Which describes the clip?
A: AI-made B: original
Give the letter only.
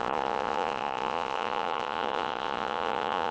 A